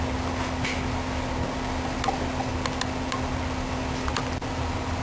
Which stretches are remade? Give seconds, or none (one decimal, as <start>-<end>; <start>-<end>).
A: none